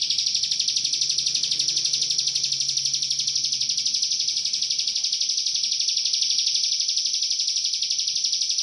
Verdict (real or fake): real